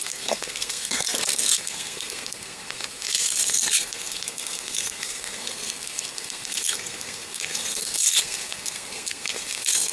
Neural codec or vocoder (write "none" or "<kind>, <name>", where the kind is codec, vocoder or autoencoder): codec, SNAC